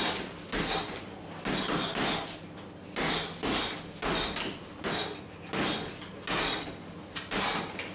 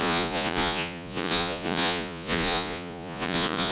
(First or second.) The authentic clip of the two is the first